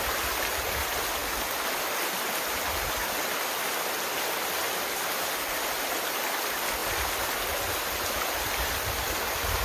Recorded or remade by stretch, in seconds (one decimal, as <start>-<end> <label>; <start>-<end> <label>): 0.0-9.6 recorded

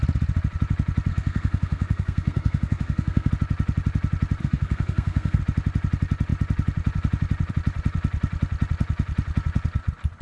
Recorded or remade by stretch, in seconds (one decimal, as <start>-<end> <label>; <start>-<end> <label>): 0.0-1.1 recorded; 1.1-3.3 remade; 3.3-4.4 recorded; 4.4-5.4 remade; 5.4-10.2 recorded

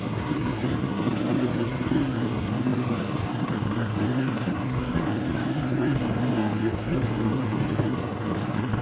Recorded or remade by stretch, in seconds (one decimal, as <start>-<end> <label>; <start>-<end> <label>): 0.0-8.8 remade

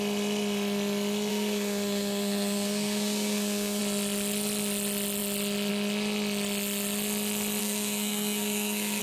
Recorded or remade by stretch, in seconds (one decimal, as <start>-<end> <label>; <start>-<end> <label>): 0.0-1.3 recorded; 1.3-3.8 remade; 3.8-7.6 recorded; 7.6-9.0 remade

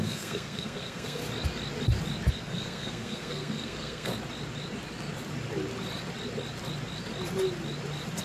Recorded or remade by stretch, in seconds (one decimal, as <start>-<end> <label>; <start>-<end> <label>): 0.0-1.2 remade; 1.2-2.3 recorded; 2.3-4.1 remade; 4.1-8.2 recorded